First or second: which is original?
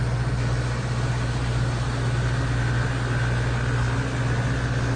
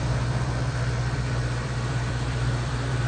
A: first